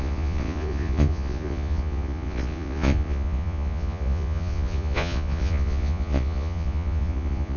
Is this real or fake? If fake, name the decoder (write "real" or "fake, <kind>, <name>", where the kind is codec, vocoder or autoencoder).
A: fake, vocoder, Vocos